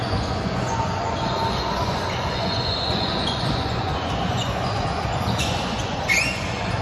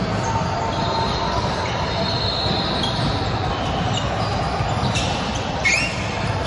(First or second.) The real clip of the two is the second